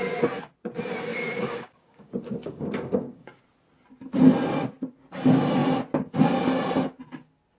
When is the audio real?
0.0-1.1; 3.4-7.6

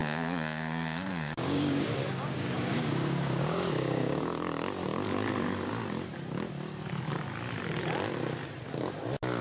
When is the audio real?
4.3-9.4

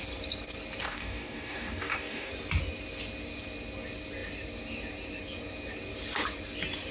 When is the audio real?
0.0-0.8; 2.3-6.9

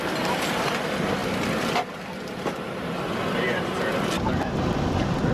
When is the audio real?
0.0-5.3

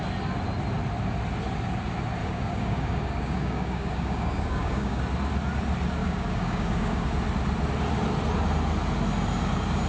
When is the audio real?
0.0-2.2; 5.0-6.0; 7.1-9.9

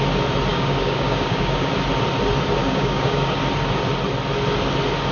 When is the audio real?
0.0-0.5; 1.7-2.6; 3.4-5.1